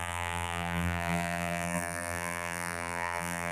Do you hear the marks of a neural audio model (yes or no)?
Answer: yes